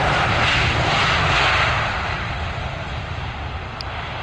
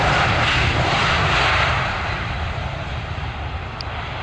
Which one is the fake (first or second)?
second